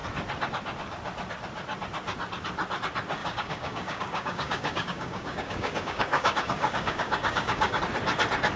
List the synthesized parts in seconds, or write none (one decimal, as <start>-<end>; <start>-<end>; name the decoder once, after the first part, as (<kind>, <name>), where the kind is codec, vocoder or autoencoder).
3.2-7.8 (codec, DAC)